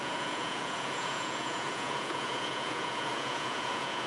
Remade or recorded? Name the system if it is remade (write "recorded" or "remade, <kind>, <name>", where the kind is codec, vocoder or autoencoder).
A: remade, vocoder, Vocos